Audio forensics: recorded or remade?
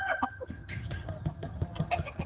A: remade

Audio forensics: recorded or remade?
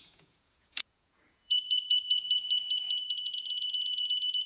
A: remade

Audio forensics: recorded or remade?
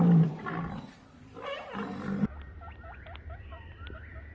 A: recorded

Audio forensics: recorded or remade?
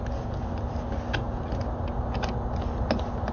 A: recorded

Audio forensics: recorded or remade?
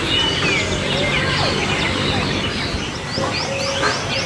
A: recorded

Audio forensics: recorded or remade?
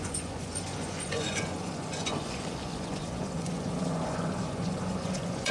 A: remade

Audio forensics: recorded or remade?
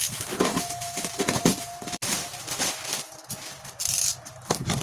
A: remade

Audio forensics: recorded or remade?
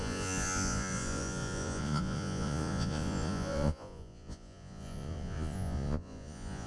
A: remade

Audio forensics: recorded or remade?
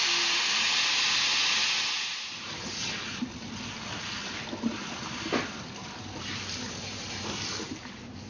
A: recorded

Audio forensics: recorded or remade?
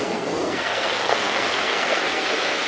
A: remade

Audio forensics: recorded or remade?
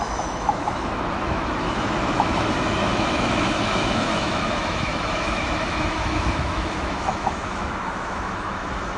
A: remade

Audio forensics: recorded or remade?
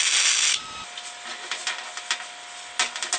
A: recorded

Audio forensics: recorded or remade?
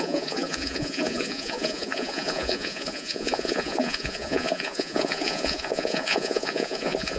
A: remade